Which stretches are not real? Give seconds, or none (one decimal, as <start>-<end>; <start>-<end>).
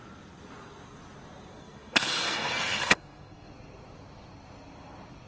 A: 1.5-3.5